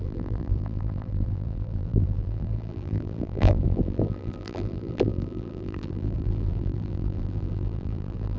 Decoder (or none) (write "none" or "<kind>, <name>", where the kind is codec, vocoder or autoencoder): vocoder, BigVGAN v2